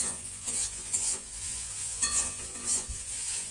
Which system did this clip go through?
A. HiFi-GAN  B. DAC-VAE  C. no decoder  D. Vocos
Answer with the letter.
D